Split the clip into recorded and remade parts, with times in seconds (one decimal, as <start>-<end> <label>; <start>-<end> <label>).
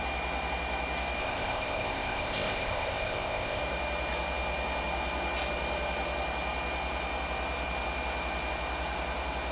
0.0-1.2 recorded; 1.2-3.6 remade; 3.6-9.5 recorded